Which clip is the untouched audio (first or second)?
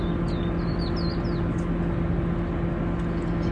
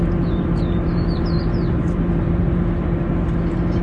first